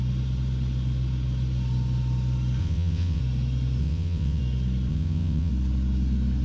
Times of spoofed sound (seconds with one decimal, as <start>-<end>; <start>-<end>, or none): 2.6-3.2; 3.8-4.4; 4.9-5.5